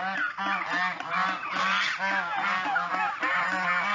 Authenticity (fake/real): real